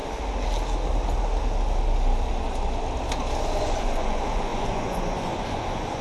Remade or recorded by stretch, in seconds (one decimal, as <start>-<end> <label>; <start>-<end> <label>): 0.0-3.6 recorded; 3.6-6.0 remade